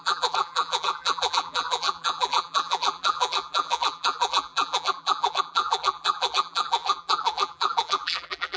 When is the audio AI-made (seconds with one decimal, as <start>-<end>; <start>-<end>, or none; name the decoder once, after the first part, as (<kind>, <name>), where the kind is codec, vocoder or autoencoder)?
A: 0.0-8.6 (vocoder, BigVGAN v2)